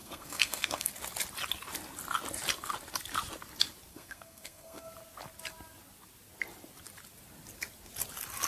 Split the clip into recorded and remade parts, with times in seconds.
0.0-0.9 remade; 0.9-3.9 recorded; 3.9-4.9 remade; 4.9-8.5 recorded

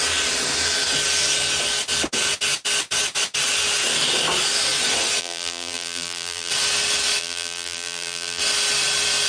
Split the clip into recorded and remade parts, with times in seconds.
0.0-5.2 recorded; 5.2-6.5 remade; 6.5-7.2 recorded; 7.2-8.4 remade; 8.4-9.3 recorded

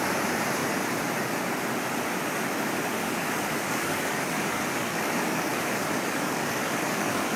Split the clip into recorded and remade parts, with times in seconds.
0.0-3.0 recorded; 3.0-7.4 remade

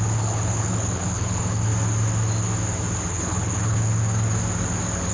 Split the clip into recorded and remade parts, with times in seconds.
0.0-1.7 remade; 1.7-3.1 recorded; 3.1-4.0 remade; 4.0-5.1 recorded

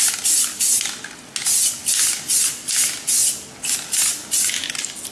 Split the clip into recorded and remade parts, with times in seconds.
0.0-5.1 recorded

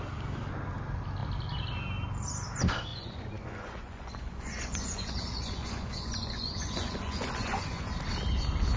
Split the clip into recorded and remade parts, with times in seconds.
0.0-2.9 recorded; 2.9-7.9 remade; 7.9-8.8 recorded

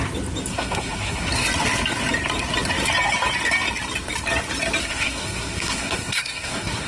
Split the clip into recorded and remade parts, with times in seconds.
0.0-0.5 recorded; 0.5-1.3 remade; 1.3-4.8 recorded; 4.8-6.9 remade

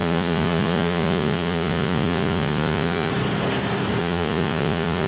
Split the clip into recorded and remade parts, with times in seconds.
0.0-3.1 remade; 3.1-4.0 recorded; 4.0-5.1 remade